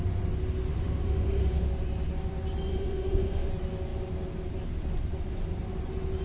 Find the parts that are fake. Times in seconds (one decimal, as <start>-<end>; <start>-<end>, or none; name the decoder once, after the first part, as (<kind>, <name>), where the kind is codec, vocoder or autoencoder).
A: 0.7-1.7 (autoencoder, DAC-VAE); 2.7-3.5